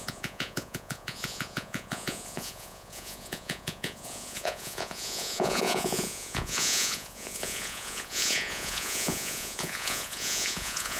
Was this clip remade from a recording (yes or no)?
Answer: yes